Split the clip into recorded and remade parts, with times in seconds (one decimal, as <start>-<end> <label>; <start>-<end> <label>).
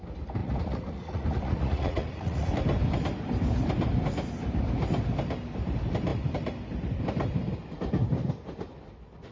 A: 0.0-0.4 recorded; 0.4-2.5 remade; 2.5-9.3 recorded